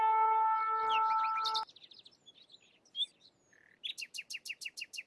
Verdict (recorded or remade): recorded